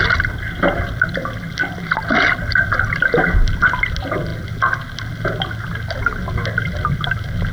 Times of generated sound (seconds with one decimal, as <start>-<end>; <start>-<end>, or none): none